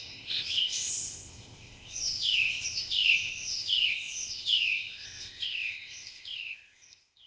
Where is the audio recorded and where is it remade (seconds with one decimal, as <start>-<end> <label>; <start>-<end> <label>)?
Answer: 0.0-7.3 remade